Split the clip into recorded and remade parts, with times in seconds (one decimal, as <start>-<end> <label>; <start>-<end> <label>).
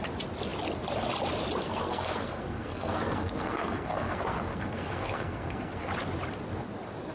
0.0-1.6 recorded; 1.6-5.9 remade; 5.9-7.1 recorded